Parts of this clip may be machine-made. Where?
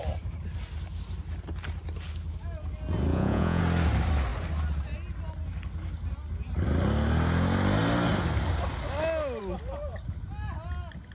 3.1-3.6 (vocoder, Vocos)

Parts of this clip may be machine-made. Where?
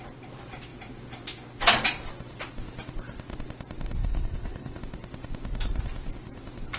4.0-4.8 (codec, HILCodec)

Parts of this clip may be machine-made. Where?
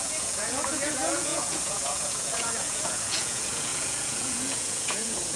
0.0-5.4 (vocoder, Vocos)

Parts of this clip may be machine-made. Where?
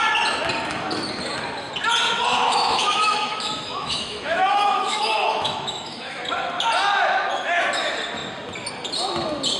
2.3-6.2 (autoencoder, DAC-VAE)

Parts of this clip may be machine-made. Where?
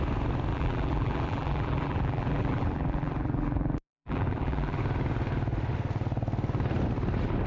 0.5-4.8 (vocoder, BigVGAN v2)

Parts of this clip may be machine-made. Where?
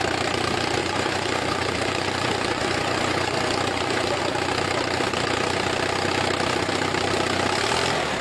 0.8-4.2 (vocoder, Vocos)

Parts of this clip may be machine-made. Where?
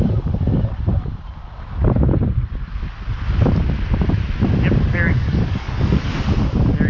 4.9-6.1 (codec, DAC)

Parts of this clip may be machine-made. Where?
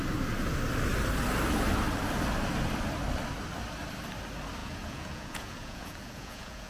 4.6-6.7 (vocoder, Vocos)